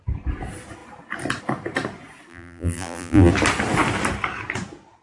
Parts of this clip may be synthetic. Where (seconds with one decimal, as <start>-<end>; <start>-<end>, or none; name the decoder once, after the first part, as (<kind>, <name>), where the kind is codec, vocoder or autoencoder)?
2.3-3.3 (vocoder, BigVGAN v2)